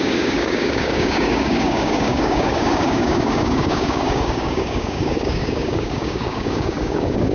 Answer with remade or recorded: remade